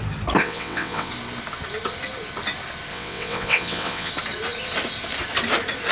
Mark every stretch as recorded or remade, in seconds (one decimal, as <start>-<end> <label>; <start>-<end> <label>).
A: 0.0-0.4 recorded; 0.4-1.1 remade; 1.1-2.9 recorded; 2.9-4.1 remade; 4.1-5.9 recorded